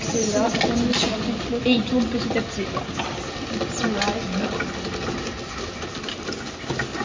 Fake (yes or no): no